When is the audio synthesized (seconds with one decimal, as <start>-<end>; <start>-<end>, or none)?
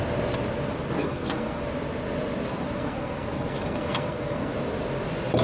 1.0-1.6; 2.5-4.5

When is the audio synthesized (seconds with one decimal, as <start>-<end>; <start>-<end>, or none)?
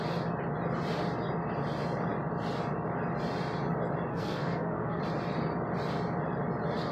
4.1-5.0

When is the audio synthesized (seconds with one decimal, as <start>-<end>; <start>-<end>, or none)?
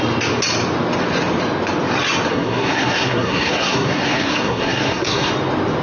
2.3-5.3